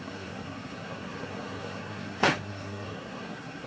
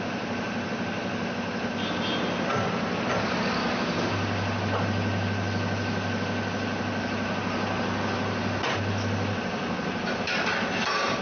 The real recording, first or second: second